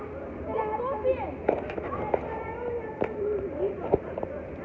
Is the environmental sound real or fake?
real